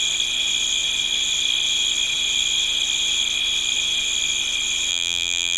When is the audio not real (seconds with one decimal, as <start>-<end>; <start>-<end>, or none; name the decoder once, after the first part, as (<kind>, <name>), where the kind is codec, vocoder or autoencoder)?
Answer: 4.9-5.6 (vocoder, BigVGAN v2)